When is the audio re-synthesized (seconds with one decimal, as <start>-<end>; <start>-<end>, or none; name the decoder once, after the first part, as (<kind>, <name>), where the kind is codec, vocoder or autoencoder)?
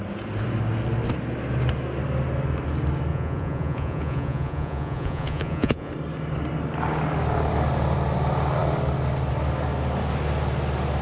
3.1-5.9 (vocoder, Vocos)